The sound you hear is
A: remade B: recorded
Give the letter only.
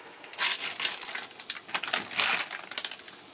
B